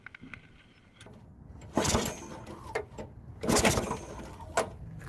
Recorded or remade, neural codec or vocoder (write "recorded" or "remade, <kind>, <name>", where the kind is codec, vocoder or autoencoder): recorded